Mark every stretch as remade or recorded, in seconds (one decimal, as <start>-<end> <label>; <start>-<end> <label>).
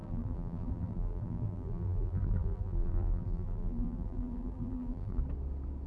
0.0-5.2 remade; 5.2-5.9 recorded